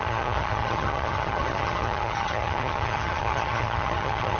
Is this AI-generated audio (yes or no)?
yes